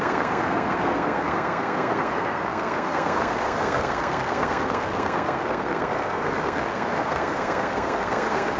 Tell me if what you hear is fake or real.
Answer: fake